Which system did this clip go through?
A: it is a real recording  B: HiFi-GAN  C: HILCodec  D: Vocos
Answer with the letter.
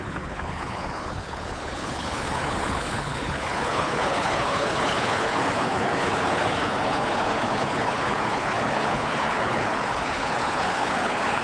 C